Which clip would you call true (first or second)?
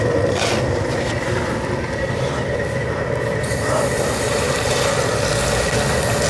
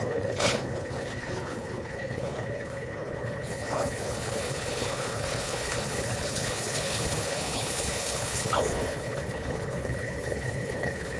first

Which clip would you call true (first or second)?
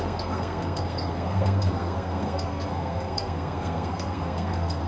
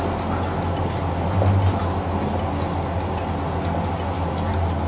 second